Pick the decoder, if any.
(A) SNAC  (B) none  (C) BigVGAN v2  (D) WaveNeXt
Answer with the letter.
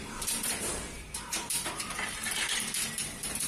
C